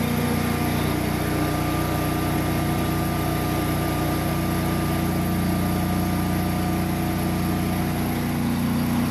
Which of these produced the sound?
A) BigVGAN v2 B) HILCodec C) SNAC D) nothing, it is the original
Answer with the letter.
D